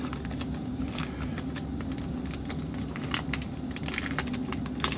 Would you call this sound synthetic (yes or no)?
no